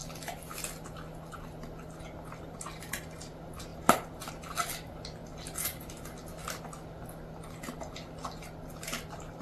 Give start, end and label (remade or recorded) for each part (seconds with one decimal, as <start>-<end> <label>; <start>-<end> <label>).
0.0-9.4 recorded